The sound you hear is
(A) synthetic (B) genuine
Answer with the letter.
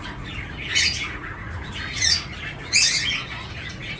A